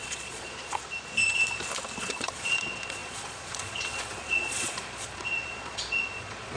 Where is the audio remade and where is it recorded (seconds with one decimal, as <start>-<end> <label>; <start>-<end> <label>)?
0.0-0.8 remade; 0.8-2.0 recorded; 2.0-6.6 remade